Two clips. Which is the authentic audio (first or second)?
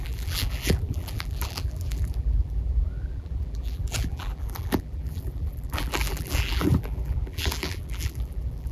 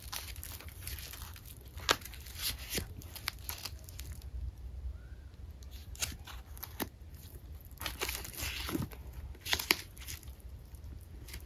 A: second